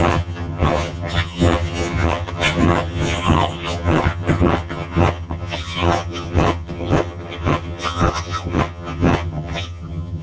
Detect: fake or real fake